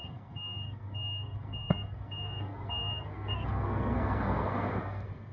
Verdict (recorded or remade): remade